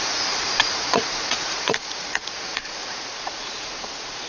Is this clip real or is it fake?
fake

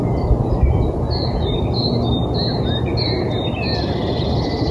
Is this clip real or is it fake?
real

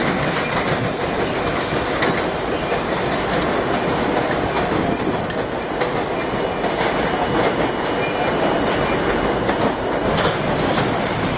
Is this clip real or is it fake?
real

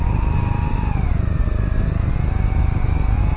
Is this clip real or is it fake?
real